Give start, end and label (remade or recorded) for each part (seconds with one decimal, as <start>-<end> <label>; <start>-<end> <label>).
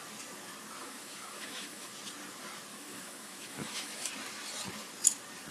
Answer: 0.0-0.8 recorded; 0.8-1.9 remade; 1.9-2.7 recorded; 2.7-4.1 remade; 4.1-5.5 recorded